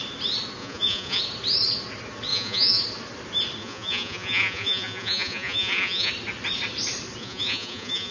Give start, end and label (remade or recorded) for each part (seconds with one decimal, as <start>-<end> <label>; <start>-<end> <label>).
0.0-0.6 recorded; 0.6-1.2 remade; 1.2-2.3 recorded; 2.3-2.8 remade; 2.8-3.6 recorded; 3.6-6.1 remade; 6.1-7.2 recorded; 7.2-8.1 remade